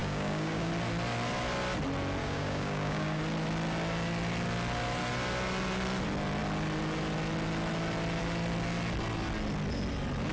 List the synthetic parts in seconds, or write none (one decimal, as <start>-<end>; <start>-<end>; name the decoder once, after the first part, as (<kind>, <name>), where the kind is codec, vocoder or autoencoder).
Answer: 0.0-0.7 (codec, DAC); 2.2-3.2